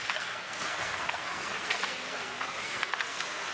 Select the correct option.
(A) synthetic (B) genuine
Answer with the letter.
A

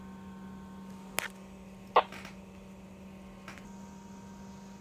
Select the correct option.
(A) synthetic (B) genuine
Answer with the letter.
B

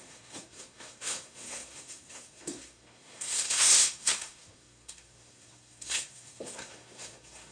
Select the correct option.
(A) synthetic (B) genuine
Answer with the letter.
A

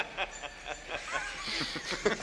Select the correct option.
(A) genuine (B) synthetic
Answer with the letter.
A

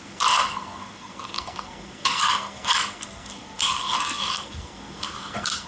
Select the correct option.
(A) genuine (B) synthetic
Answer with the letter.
B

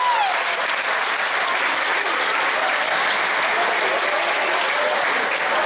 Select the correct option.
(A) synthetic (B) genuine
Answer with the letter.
B